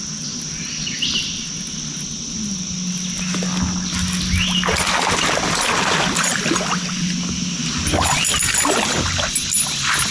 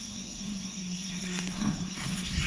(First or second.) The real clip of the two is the first